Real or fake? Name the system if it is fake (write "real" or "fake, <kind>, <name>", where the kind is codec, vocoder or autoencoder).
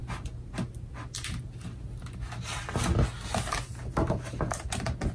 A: real